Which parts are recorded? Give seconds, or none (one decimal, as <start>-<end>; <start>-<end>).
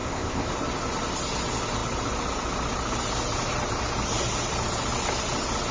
0.5-5.7